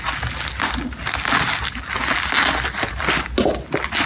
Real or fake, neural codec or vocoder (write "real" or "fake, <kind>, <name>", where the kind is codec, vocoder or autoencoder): real